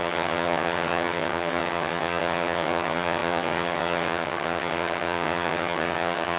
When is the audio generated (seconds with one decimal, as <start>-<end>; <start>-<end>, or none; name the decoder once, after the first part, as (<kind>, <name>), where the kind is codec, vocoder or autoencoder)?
0.0-6.4 (vocoder, HiFi-GAN)